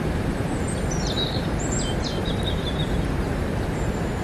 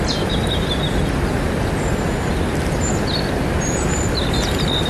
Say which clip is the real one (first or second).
second